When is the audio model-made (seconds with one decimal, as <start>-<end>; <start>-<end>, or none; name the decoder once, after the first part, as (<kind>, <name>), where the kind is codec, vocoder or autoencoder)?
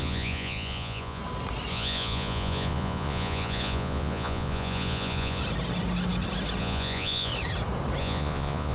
0.0-1.2 (vocoder, Vocos); 1.7-5.4; 6.6-7.3; 8.0-8.7